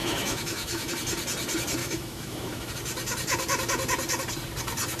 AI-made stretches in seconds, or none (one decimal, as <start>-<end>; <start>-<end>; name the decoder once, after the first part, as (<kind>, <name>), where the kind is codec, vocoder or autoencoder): 0.0-0.9 (autoencoder, DAC-VAE); 1.8-2.7